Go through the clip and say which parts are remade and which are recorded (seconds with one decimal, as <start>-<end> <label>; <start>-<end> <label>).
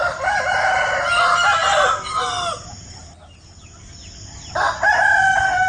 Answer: 0.0-5.7 recorded